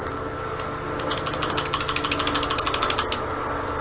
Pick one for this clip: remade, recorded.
recorded